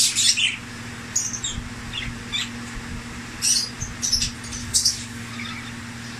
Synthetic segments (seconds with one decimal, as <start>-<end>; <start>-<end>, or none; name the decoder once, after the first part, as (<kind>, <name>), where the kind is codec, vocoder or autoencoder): 4.6-5.3 (codec, DAC)